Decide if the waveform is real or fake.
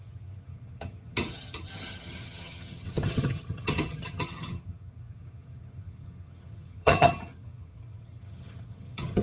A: fake